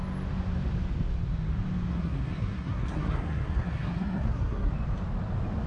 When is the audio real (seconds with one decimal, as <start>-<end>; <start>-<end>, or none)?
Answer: 0.0-1.9; 4.7-5.7